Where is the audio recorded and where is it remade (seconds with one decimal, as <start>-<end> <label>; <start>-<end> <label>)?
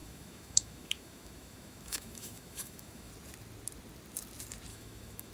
0.0-3.1 remade; 3.1-4.7 recorded; 4.7-5.3 remade